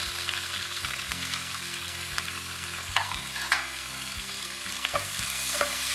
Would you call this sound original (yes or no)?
no